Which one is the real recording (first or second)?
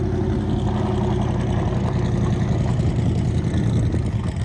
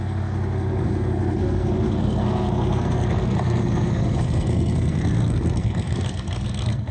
first